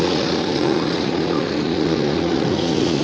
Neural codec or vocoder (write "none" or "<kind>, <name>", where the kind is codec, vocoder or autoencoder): vocoder, Vocos